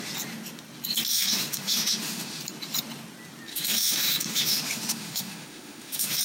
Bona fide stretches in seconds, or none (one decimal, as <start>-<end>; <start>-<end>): 0.0-1.1; 2.4-3.5